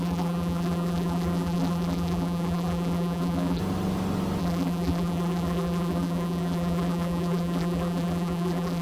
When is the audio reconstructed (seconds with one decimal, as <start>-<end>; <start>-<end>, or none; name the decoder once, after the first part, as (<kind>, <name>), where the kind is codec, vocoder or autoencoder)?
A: 0.0-3.6 (vocoder, BigVGAN v2); 4.4-8.8